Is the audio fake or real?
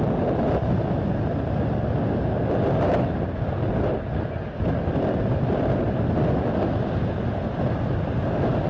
real